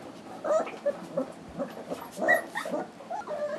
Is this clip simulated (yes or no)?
no